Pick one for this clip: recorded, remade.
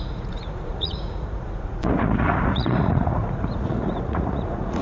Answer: remade